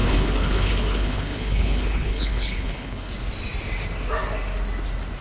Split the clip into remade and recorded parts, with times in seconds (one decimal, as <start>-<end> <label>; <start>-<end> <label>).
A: 0.0-3.1 remade; 3.1-5.2 recorded